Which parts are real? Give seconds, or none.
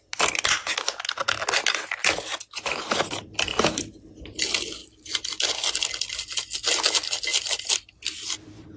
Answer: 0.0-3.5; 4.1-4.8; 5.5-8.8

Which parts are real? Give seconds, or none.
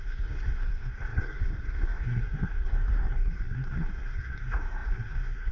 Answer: none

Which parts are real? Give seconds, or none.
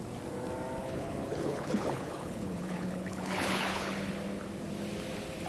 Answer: 0.0-0.8; 4.1-5.5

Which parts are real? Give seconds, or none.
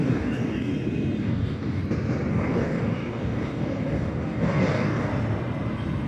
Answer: 0.7-1.2; 1.8-2.3; 5.1-6.1